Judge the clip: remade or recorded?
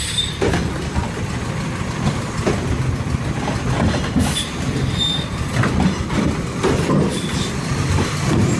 recorded